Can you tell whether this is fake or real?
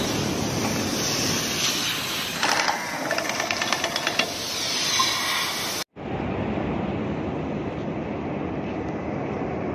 real